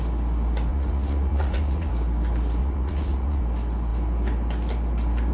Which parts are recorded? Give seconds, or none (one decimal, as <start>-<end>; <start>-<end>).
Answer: 0.0-0.7; 1.9-2.6; 3.4-5.3